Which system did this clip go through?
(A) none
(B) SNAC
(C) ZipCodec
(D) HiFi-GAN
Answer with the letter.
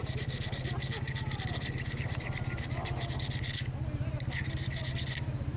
A